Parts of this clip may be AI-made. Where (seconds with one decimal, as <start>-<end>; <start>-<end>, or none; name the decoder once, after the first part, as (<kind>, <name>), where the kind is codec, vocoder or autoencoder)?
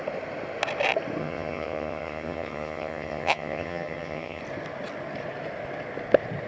1.2-4.4 (vocoder, HiFi-GAN)